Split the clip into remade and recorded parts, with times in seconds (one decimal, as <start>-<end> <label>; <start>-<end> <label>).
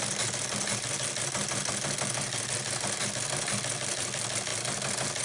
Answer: 0.0-5.2 recorded